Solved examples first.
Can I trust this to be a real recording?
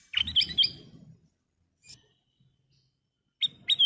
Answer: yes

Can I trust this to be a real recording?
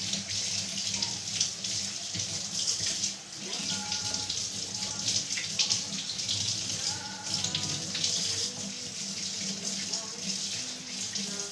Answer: yes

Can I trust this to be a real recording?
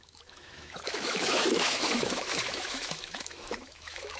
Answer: no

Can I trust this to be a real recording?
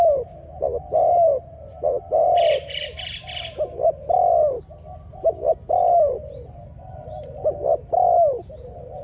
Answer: yes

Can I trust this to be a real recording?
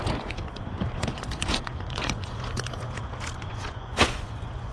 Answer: no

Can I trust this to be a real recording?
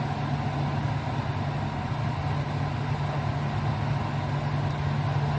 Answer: yes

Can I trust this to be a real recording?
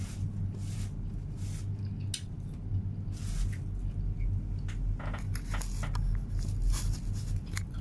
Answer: yes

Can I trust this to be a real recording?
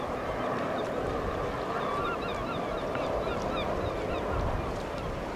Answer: yes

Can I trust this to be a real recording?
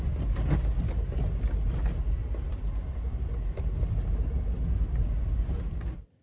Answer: yes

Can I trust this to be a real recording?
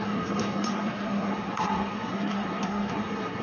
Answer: no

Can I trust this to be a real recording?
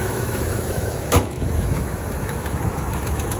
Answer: no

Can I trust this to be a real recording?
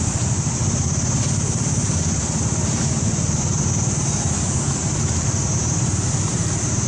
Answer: no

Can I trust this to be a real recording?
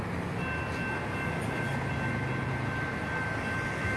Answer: yes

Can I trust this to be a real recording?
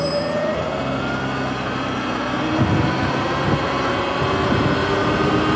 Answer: yes